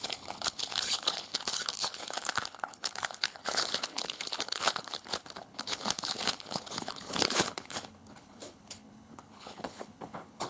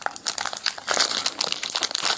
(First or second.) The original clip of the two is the second